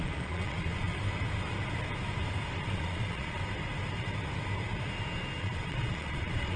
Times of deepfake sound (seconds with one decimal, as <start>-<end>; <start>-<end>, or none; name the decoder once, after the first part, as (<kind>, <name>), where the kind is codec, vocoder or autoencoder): 0.0-0.9 (vocoder, Vocos); 2.5-3.4; 5.4-6.6